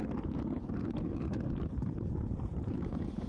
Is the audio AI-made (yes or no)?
yes